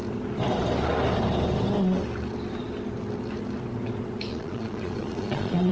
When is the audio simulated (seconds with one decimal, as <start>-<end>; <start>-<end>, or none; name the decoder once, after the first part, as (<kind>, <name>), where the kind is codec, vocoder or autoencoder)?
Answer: 4.3-5.7 (vocoder, Vocos)